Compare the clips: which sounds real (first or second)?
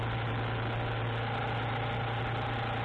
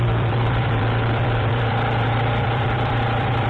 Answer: first